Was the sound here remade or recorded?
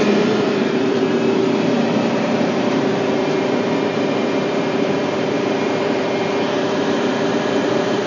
remade